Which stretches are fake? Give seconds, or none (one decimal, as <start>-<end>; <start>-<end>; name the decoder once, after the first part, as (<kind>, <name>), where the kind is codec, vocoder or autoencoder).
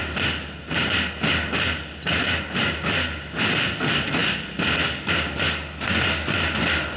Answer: none